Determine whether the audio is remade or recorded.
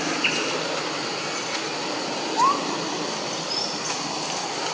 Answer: recorded